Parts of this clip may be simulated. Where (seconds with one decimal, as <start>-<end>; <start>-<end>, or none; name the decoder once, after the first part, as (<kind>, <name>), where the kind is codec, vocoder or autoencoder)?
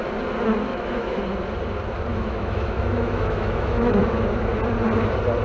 0.7-1.2 (autoencoder, DAC-VAE); 2.1-4.0